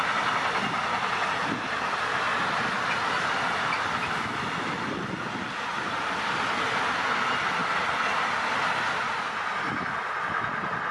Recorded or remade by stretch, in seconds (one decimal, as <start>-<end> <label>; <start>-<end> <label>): 0.0-10.9 recorded